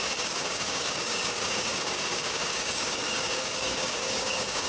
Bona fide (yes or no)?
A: no